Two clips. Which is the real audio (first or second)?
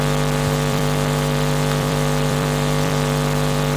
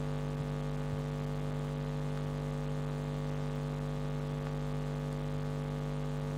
second